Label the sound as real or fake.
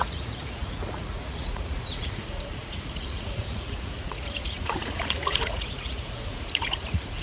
fake